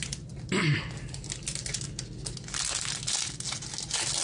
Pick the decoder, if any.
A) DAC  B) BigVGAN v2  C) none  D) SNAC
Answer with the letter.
C